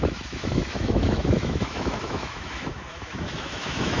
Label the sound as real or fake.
fake